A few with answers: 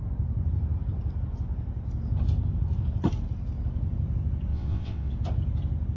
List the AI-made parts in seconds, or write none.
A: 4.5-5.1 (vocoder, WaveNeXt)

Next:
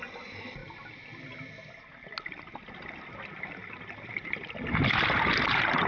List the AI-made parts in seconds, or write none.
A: none